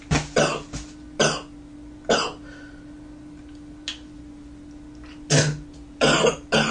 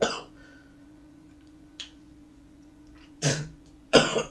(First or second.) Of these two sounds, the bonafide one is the first